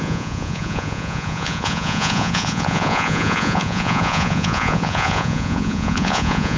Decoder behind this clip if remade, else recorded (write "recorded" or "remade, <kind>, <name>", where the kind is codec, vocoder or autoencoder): remade, vocoder, Vocos